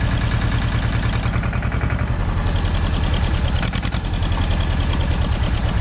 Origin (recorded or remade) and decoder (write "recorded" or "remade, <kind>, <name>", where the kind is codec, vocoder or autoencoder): recorded